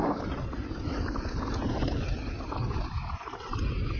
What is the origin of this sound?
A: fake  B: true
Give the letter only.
B